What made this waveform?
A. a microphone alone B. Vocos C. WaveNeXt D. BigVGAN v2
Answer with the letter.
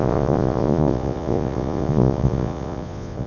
B